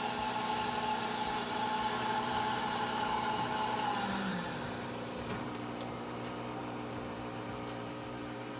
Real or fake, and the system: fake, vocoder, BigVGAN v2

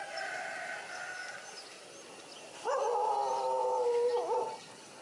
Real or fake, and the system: real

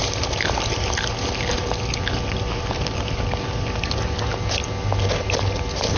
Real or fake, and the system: real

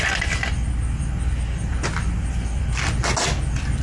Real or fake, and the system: real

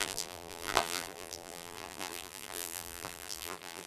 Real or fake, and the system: fake, vocoder, BigVGAN v2